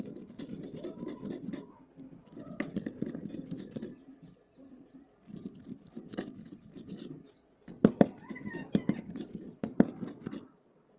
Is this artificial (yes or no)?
no